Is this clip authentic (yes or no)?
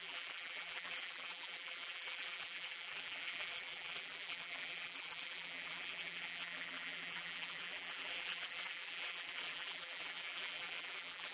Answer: no